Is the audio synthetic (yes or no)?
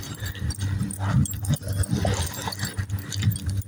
yes